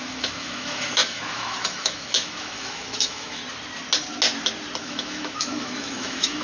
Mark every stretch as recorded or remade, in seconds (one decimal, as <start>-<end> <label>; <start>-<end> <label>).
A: 0.0-3.4 remade; 3.4-4.8 recorded; 4.8-6.4 remade